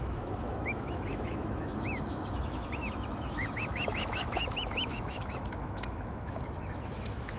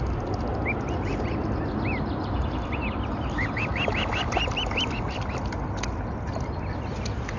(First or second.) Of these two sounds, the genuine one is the second